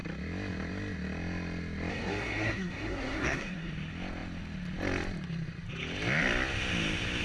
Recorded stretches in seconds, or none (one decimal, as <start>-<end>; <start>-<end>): 0.0-1.9; 3.7-7.2